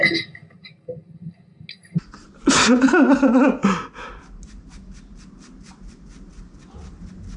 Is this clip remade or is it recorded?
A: recorded